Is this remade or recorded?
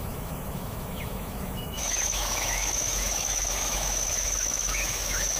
remade